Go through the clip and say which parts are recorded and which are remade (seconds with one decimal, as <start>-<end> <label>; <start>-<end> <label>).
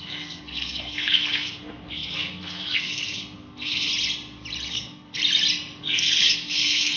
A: 0.0-3.9 remade; 3.9-4.7 recorded; 4.7-5.2 remade; 5.2-5.8 recorded; 5.8-7.0 remade